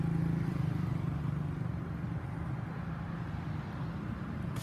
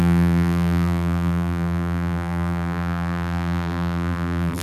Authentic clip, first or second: first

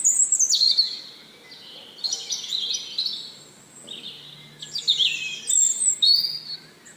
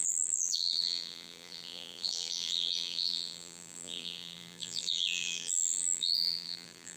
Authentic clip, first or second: first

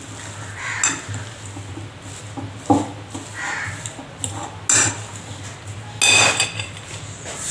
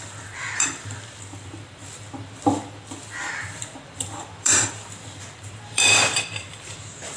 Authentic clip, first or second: first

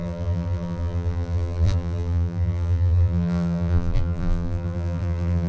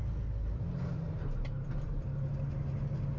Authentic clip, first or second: second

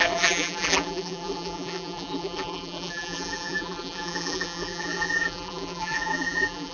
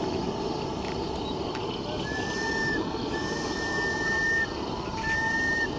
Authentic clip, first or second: second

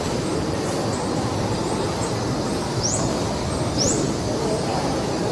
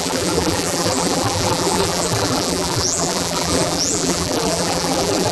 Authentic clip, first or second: first